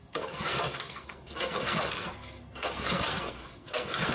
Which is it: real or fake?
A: fake